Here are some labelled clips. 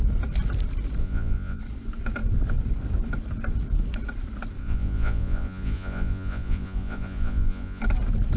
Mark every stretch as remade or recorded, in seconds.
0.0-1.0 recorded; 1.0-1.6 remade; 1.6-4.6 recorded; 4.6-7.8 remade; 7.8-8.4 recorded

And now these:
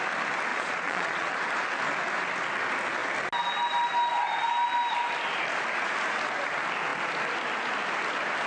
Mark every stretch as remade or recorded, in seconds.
0.0-0.5 recorded; 0.5-1.3 remade; 1.3-8.5 recorded

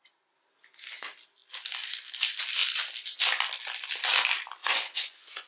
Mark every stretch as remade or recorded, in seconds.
0.0-4.6 recorded; 4.6-5.5 remade